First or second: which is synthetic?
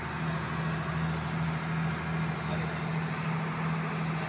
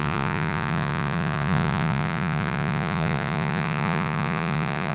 second